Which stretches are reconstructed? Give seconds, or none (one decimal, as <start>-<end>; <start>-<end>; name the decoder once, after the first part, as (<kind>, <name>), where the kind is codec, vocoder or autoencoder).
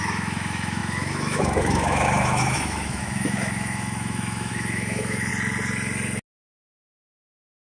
0.0-5.3 (autoencoder, DAC-VAE); 6.9-7.8